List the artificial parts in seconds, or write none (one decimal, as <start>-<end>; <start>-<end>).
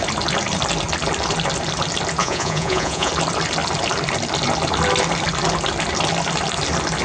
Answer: 2.2-3.1